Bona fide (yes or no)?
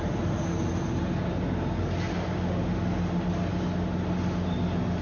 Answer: yes